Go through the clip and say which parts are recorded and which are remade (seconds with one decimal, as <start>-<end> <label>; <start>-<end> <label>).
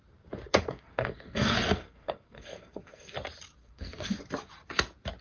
0.0-0.5 recorded; 0.5-3.1 remade; 3.1-3.6 recorded; 3.6-4.2 remade; 4.2-5.2 recorded